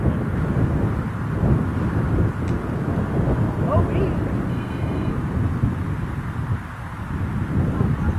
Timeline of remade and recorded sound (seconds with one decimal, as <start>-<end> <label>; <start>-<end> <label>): 0.0-4.5 recorded; 4.5-5.1 remade; 5.1-8.2 recorded